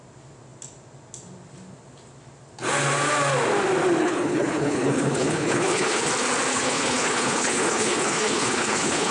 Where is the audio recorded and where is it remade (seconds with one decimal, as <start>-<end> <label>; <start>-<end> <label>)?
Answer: 0.0-4.0 recorded; 4.0-6.1 remade; 6.1-6.5 recorded; 6.5-9.1 remade